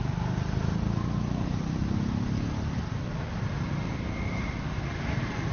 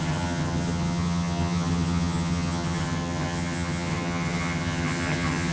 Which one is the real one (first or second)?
first